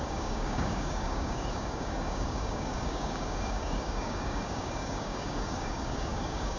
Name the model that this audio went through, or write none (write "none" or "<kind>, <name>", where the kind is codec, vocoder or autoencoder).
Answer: codec, DAC